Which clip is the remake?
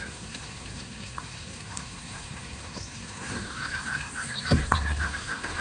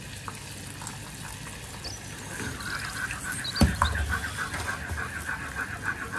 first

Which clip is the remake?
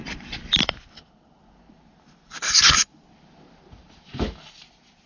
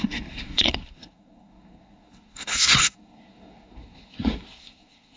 second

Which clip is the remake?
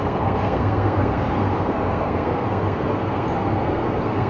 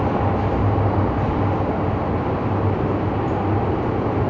first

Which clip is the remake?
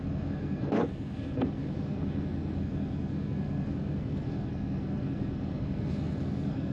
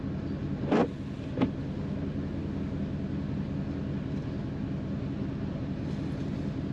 first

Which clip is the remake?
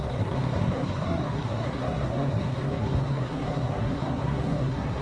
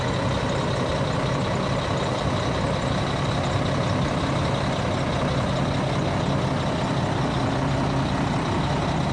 first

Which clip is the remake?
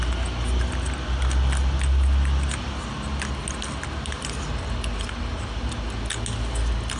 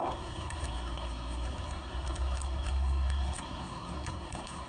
second